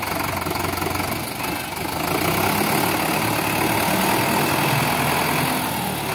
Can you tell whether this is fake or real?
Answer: real